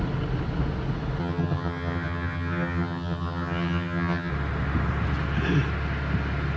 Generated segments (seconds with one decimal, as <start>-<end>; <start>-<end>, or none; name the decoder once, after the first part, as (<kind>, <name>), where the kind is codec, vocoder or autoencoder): 1.2-4.3 (vocoder, HiFi-GAN)